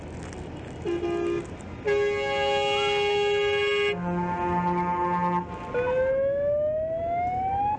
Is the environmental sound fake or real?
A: real